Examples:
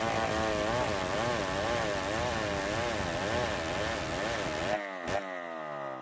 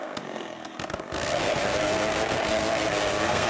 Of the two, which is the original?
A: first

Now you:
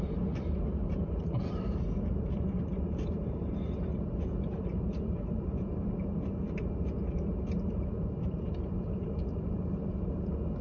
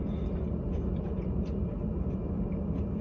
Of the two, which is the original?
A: second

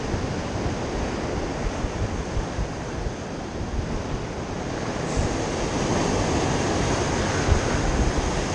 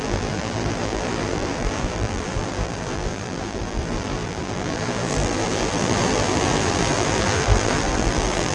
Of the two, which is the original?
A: first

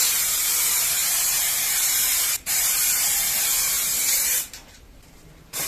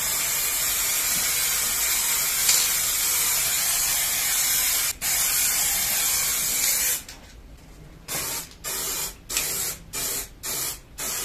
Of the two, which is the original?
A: second